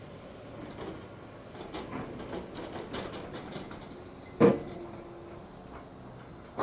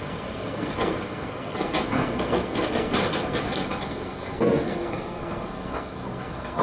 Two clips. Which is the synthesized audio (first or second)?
second